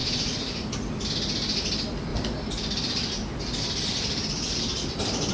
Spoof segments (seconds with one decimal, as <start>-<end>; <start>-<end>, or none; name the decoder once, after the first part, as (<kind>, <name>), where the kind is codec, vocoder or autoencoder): 0.0-1.0 (vocoder, BigVGAN v2); 2.1-5.3